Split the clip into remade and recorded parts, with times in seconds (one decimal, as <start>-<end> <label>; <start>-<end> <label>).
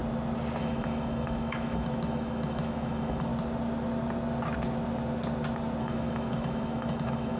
0.0-0.6 recorded; 0.6-3.3 remade; 3.3-5.8 recorded; 5.8-7.4 remade